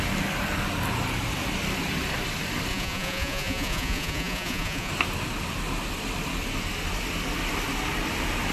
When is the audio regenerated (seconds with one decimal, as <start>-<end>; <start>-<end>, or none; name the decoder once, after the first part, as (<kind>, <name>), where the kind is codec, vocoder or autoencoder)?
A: 2.7-4.9 (vocoder, Vocos)